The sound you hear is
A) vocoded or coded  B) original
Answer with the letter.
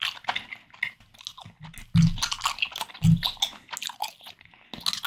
B